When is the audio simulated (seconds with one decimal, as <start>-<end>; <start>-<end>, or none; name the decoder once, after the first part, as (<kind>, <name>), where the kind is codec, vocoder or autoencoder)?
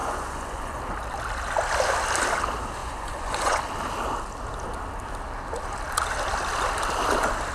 0.0-0.8 (vocoder, Vocos); 2.8-3.6